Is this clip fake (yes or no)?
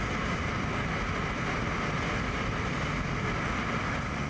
no